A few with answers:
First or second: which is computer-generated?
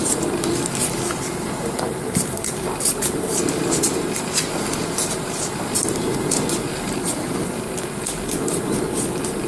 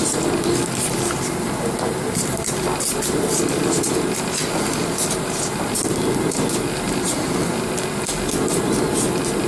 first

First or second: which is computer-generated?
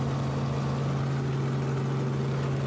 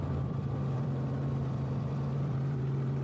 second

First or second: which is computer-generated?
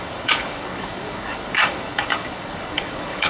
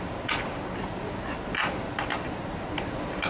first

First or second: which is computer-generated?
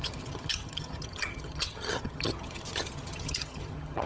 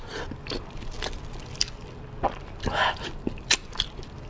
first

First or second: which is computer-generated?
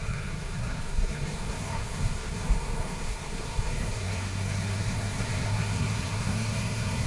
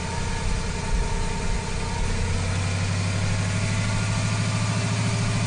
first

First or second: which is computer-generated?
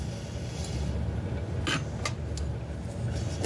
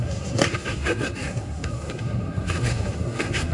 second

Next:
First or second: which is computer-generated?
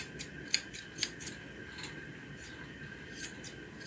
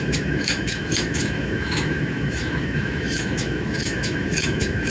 second